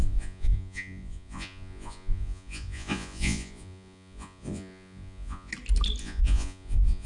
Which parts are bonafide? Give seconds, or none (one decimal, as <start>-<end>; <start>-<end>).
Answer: 5.5-6.0